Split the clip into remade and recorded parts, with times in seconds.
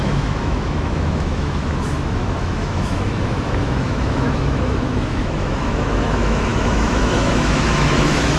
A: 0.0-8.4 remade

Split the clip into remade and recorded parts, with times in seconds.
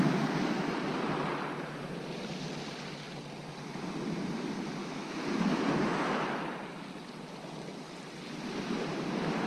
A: 0.0-4.8 recorded; 4.8-5.6 remade; 5.6-9.5 recorded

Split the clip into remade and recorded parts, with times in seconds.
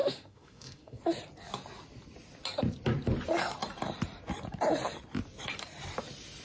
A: 0.0-1.0 remade; 1.0-6.4 recorded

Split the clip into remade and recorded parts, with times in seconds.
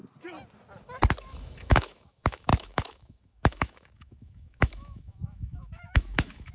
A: 0.0-1.2 recorded; 1.2-6.5 remade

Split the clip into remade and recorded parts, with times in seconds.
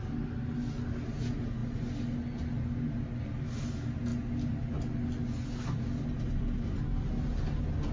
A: 0.0-7.9 recorded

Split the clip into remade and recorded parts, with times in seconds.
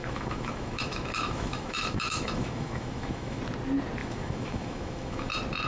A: 0.0-3.4 remade; 3.4-4.0 recorded; 4.0-5.3 remade; 5.3-5.7 recorded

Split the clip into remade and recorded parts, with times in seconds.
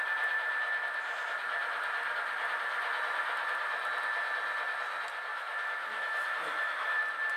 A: 0.0-5.3 recorded; 5.3-7.0 remade; 7.0-7.4 recorded